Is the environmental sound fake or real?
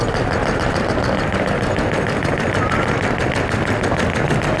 real